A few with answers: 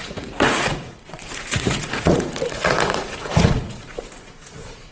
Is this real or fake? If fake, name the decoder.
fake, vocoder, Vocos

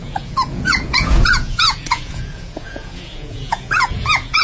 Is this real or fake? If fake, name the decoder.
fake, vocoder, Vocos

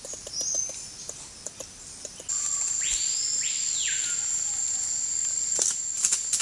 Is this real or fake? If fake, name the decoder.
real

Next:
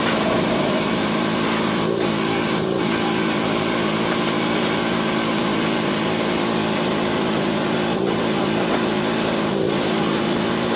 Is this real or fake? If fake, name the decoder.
real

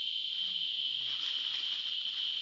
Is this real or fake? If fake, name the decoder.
real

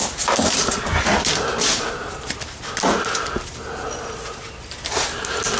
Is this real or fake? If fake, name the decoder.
real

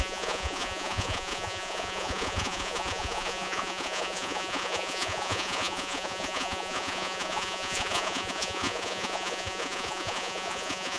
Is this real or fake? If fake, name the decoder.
fake, vocoder, Vocos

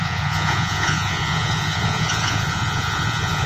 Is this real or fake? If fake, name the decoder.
fake, vocoder, Vocos